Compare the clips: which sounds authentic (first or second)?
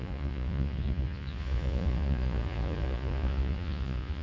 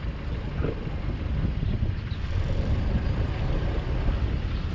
second